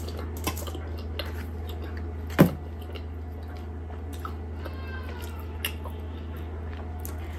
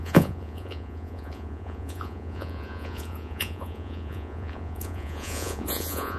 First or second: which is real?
first